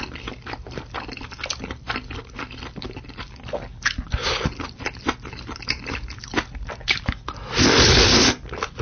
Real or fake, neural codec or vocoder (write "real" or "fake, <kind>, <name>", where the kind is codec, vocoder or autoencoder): real